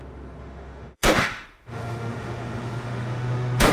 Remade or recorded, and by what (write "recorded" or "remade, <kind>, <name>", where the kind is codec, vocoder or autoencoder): remade, autoencoder, DAC-VAE